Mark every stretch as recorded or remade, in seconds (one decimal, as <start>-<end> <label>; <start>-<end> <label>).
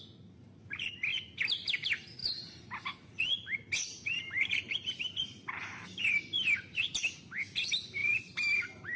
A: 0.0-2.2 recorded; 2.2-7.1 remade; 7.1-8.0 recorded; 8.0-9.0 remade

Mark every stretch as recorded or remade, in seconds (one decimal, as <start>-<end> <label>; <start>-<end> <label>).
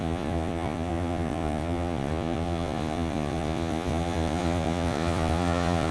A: 0.0-5.9 remade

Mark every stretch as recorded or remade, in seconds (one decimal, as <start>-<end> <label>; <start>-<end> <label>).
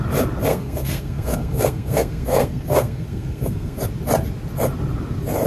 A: 0.0-0.5 recorded; 0.5-3.8 remade; 3.8-5.5 recorded